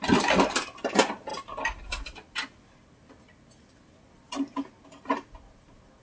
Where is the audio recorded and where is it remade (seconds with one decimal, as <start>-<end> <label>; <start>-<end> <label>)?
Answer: 0.0-6.0 recorded